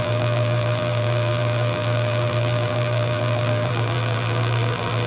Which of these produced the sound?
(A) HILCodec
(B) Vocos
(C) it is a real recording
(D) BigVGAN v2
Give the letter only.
D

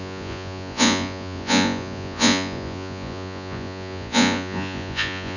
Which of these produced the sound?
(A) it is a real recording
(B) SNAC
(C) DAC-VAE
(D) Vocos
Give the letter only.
D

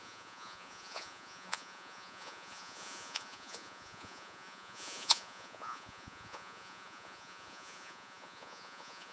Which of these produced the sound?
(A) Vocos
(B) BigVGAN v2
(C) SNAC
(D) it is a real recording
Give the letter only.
A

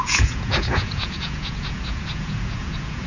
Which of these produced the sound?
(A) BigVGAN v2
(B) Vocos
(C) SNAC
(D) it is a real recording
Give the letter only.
B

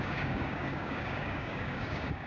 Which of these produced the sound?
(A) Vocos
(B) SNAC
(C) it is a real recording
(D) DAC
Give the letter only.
D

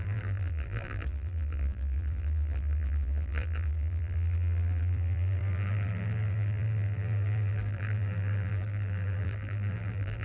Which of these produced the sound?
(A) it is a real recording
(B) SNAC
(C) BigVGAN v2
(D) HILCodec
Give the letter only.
C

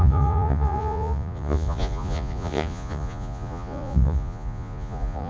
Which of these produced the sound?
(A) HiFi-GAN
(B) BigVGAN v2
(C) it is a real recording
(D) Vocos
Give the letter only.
D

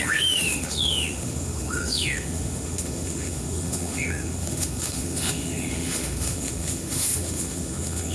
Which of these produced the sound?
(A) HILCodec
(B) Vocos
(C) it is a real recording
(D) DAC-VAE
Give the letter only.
D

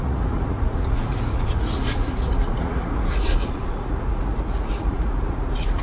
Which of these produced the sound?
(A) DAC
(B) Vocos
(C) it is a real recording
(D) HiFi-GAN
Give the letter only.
B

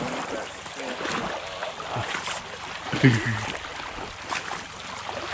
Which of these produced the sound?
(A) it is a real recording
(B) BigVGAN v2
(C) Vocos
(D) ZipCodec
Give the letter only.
A